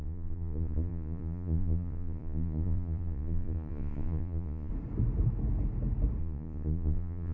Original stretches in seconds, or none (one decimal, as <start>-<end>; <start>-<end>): 4.7-6.2